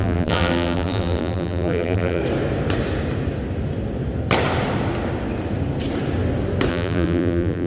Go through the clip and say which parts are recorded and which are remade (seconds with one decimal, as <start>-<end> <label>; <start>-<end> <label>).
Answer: 0.0-2.2 remade; 2.2-6.7 recorded; 6.7-7.7 remade